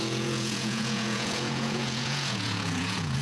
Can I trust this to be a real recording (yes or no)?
no